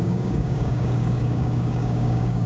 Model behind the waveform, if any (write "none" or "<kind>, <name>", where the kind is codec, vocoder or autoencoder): codec, DAC